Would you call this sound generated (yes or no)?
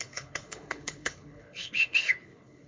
yes